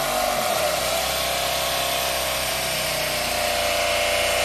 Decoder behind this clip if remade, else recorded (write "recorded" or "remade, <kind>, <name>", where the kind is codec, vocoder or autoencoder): recorded